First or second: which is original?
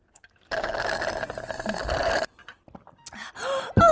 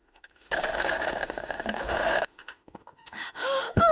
first